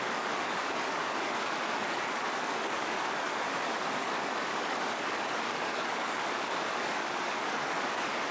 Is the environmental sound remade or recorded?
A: remade